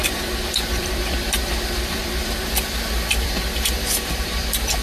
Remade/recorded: remade